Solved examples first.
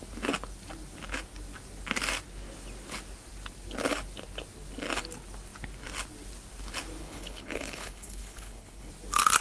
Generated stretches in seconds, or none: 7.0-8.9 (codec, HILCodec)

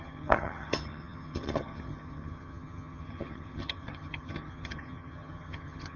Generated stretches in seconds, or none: 0.0-6.0 (vocoder, HiFi-GAN)

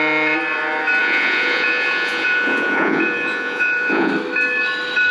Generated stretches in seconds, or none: 1.0-4.1 (vocoder, Vocos)

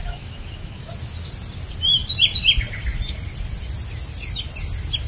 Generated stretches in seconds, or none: 0.0-0.9 (autoencoder, DAC-VAE)

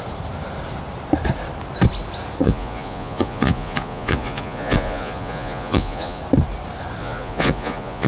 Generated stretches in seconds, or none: 2.4-6.2 (vocoder, Vocos); 7.0-8.1

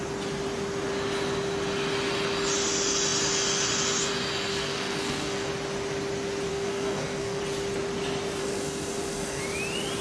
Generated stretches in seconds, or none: 4.5-5.5 (codec, SNAC); 6.5-7.4; 8.4-9.4

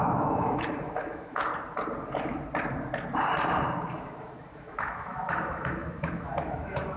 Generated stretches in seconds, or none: 0.0-1.5 (autoencoder, DAC-VAE); 3.9-7.0